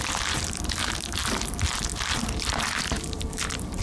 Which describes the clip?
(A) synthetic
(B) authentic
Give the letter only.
A